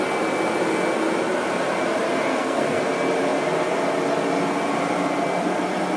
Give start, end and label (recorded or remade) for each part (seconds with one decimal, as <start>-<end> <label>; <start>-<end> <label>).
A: 0.0-2.3 recorded; 2.3-2.8 remade; 2.8-6.0 recorded